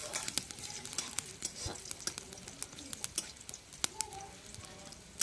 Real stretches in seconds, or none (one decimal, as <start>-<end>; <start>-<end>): 0.0-5.2

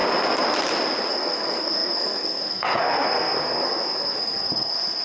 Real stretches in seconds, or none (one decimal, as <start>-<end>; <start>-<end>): 0.0-1.1